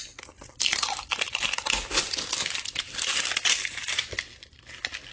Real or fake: real